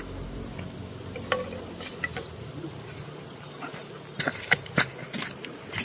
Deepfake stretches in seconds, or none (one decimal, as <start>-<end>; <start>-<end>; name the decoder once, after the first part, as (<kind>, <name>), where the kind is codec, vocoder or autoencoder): none

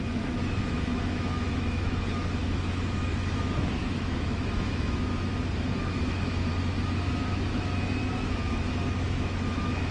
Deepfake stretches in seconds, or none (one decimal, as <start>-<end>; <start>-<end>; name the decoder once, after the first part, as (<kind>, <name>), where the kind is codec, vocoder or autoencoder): 0.0-6.5 (autoencoder, DAC-VAE); 7.3-9.9

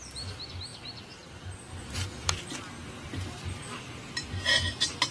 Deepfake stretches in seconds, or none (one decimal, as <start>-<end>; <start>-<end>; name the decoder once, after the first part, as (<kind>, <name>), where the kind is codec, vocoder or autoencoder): none